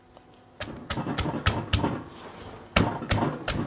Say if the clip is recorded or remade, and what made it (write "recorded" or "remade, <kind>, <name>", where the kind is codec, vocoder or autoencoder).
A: recorded